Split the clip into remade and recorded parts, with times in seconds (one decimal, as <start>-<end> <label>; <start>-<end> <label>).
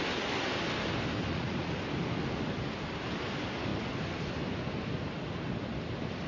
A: 0.0-1.3 recorded; 1.3-1.8 remade; 1.8-6.3 recorded